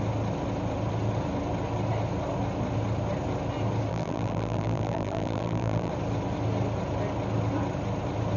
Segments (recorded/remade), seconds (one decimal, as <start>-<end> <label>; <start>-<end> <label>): 0.0-3.9 recorded; 3.9-5.9 remade; 5.9-8.4 recorded